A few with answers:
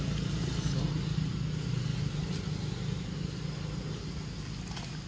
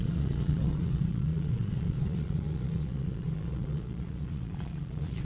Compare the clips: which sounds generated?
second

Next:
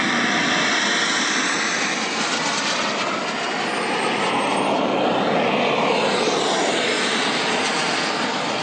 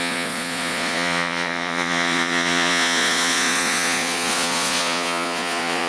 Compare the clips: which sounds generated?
second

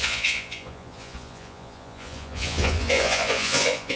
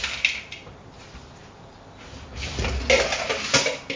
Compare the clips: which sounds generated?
first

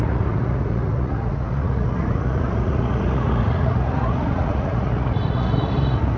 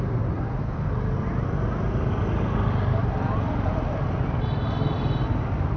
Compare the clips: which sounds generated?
first